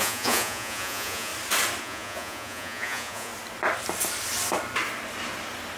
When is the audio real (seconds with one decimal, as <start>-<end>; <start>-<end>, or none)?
1.3-1.8; 3.3-5.8